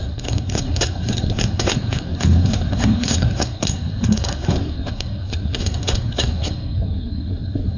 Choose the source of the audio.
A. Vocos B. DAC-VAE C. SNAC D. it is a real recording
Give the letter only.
C